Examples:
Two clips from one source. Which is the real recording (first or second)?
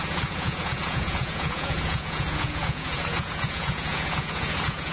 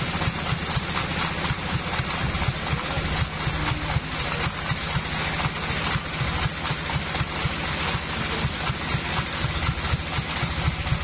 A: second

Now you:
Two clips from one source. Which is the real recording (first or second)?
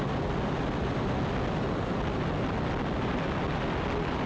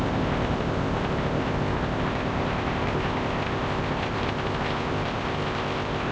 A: first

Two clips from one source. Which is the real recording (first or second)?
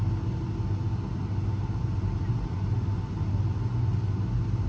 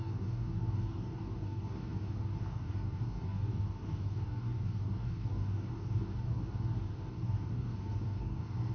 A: first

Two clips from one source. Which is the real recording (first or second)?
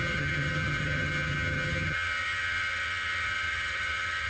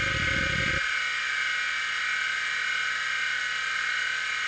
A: second